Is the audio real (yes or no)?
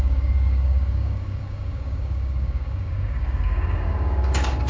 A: no